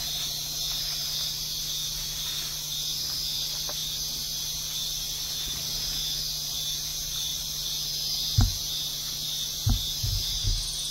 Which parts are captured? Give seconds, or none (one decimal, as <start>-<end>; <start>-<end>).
0.0-2.9; 3.4-6.9; 7.5-10.9